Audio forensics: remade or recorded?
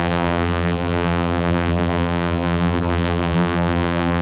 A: remade